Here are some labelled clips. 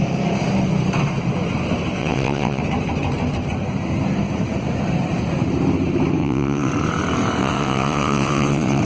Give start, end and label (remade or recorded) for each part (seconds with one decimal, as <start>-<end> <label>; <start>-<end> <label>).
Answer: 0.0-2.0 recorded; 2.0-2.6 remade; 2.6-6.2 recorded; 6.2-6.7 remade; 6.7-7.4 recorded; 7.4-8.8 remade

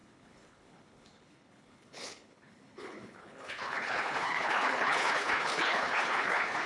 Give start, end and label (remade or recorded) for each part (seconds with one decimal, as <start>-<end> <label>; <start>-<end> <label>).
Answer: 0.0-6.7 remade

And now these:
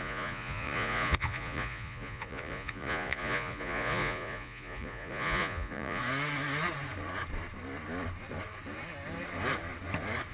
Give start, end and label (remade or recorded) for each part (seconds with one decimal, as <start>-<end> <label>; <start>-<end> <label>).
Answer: 0.0-6.0 remade; 6.0-10.3 recorded

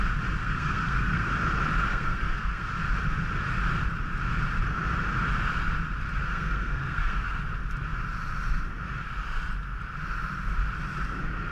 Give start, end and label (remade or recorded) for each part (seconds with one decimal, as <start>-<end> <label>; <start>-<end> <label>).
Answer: 0.0-0.4 recorded; 0.4-1.3 remade; 1.3-1.9 recorded; 1.9-2.7 remade; 2.7-6.2 recorded; 6.2-7.4 remade; 7.4-11.5 recorded

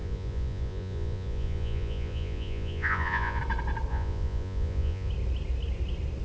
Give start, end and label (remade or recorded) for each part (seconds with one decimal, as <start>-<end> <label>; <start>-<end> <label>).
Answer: 0.0-3.4 remade; 3.4-3.9 recorded; 3.9-5.1 remade; 5.1-6.2 recorded

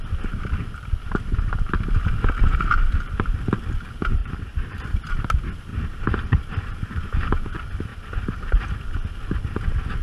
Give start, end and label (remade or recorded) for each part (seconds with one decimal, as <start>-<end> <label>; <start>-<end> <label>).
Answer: 0.0-4.2 recorded; 4.2-4.8 remade; 4.8-5.7 recorded; 5.7-7.1 remade; 7.1-7.9 recorded; 7.9-8.5 remade; 8.5-10.0 recorded

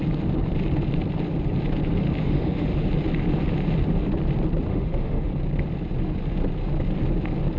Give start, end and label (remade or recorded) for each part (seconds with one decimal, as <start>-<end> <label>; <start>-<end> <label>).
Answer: 0.0-2.2 recorded; 2.2-2.9 remade; 2.9-4.7 recorded; 4.7-5.3 remade; 5.3-7.6 recorded

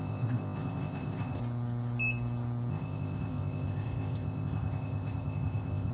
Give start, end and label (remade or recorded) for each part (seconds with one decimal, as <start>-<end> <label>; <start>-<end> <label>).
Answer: 0.0-1.4 remade; 1.4-2.7 recorded; 2.7-5.9 remade